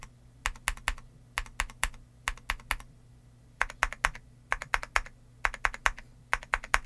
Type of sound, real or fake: real